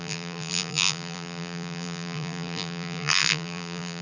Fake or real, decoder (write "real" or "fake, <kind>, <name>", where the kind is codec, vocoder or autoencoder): fake, vocoder, BigVGAN v2